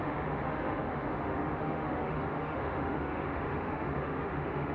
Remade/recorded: remade